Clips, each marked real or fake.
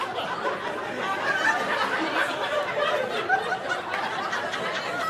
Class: real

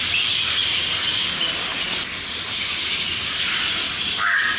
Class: real